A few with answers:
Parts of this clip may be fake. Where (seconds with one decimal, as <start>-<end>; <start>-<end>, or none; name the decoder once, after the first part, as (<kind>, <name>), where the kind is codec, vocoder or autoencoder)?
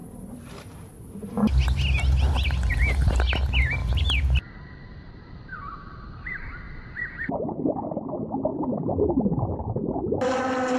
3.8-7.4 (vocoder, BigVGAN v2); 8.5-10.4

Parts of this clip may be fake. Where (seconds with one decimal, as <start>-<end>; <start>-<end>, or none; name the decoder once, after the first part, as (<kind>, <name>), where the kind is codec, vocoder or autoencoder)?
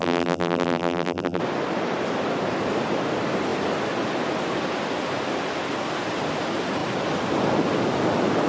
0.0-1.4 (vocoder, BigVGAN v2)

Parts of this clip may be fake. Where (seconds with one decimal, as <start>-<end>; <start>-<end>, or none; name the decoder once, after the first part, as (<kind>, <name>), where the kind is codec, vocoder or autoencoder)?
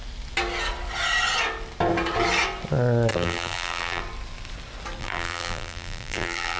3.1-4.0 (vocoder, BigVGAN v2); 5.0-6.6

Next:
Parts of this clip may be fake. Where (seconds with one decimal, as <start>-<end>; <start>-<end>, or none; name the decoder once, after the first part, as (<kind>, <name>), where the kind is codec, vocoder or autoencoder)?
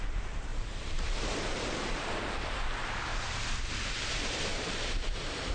0.5-2.2 (vocoder, BigVGAN v2); 3.1-4.1; 4.5-5.5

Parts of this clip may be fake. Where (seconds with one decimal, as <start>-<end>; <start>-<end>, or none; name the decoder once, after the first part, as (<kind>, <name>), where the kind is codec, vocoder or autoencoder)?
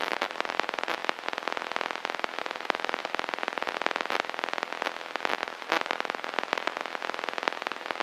0.0-1.0 (vocoder, BigVGAN v2); 2.4-3.0; 5.3-6.8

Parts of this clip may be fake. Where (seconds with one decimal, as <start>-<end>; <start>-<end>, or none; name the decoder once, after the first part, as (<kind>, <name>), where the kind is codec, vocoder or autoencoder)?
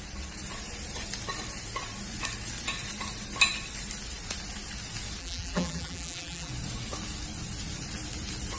5.2-6.5 (vocoder, BigVGAN v2)